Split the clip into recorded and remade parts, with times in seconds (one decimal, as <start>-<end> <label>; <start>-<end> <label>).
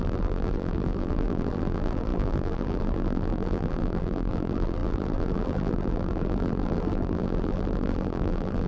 0.0-8.7 remade